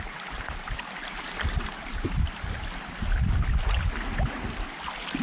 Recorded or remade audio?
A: recorded